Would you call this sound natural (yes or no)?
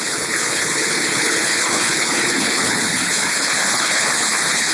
no